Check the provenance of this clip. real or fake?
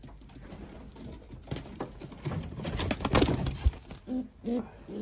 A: real